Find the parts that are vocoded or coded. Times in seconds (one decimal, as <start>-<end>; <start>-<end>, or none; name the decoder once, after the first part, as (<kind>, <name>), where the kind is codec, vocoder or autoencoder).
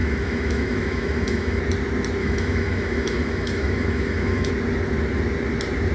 0.0-1.6 (autoencoder, DAC-VAE); 2.2-4.5